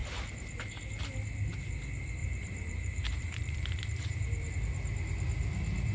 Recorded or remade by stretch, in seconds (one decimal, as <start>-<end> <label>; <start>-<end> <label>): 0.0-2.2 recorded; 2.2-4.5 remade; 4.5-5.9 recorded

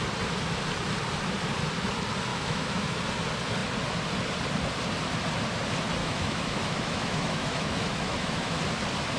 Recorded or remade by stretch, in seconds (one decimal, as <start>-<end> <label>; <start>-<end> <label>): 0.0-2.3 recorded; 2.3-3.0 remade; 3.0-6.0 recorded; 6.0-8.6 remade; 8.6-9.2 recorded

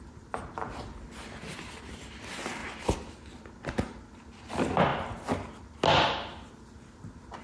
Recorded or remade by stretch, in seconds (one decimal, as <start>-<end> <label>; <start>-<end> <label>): 0.0-7.4 recorded